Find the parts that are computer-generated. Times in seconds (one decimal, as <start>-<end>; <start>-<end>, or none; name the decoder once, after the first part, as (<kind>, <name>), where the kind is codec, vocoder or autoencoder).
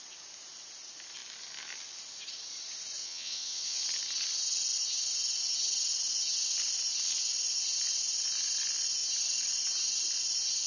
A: 3.0-3.8 (vocoder, WaveNeXt)